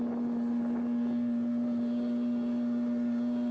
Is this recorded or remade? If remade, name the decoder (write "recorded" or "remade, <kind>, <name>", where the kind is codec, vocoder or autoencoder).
recorded